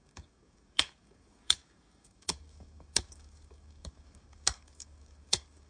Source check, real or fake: fake